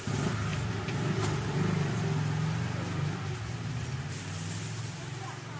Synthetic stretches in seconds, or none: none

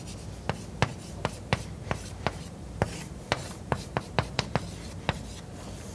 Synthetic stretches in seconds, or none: 0.9-4.4 (vocoder, BigVGAN v2)